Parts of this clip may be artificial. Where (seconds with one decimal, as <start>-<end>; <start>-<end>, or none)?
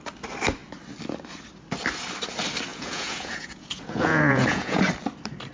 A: 2.7-4.8